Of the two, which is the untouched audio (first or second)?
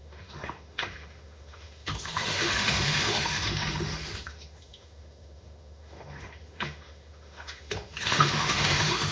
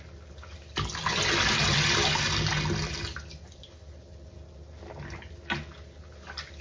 second